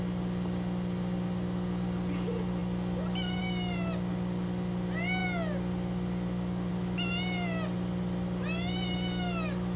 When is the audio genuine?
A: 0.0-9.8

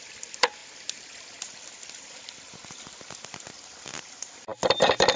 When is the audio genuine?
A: 0.0-5.2